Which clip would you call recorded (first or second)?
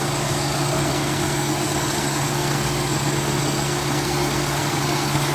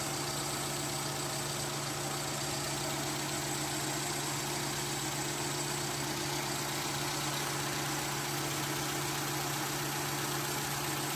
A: second